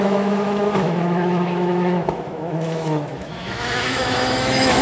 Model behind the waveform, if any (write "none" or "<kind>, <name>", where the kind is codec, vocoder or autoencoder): autoencoder, DAC-VAE